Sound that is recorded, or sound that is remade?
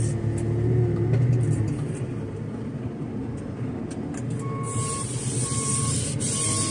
recorded